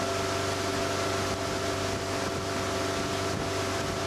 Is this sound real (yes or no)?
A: yes